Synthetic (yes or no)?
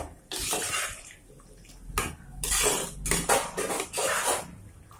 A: no